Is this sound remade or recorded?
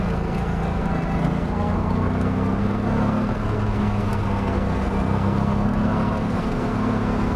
remade